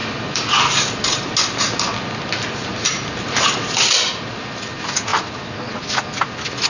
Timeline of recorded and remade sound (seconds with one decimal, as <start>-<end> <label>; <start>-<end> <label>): 0.0-2.7 recorded; 2.7-3.5 remade; 3.5-6.7 recorded